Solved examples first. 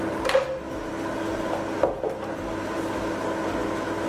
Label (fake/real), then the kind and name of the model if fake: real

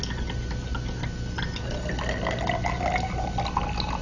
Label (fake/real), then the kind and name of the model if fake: real